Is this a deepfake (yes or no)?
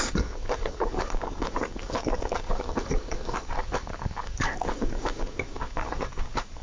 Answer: yes